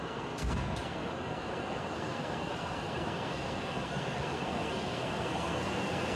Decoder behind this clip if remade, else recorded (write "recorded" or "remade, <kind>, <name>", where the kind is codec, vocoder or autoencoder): remade, codec, SNAC